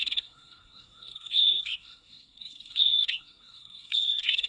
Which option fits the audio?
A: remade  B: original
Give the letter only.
A